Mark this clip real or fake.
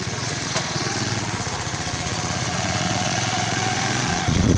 fake